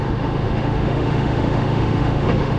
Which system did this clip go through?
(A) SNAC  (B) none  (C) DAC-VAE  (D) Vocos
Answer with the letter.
C